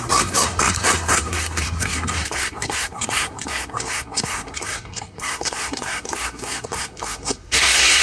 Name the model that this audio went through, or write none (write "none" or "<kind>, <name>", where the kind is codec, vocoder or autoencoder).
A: codec, SNAC